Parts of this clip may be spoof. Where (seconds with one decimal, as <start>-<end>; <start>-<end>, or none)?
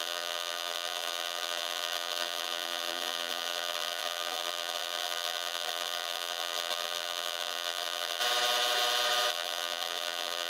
0.0-8.2; 9.3-10.5